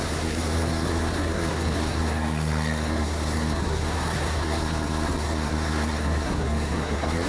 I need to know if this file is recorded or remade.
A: remade